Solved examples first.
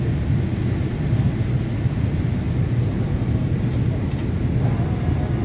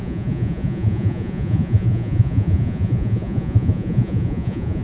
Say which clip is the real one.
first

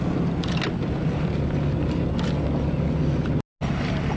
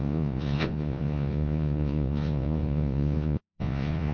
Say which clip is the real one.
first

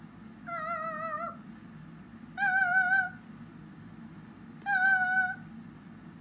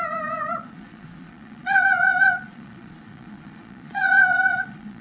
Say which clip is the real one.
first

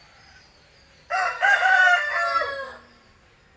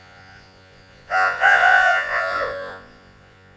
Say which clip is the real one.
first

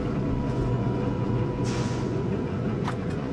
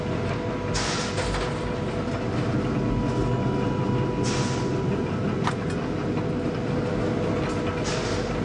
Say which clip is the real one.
second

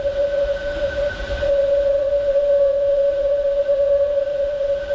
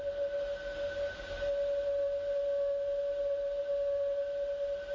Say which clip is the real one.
second